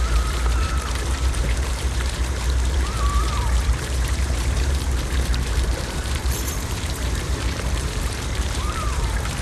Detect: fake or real fake